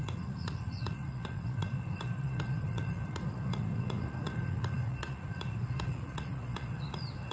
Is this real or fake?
fake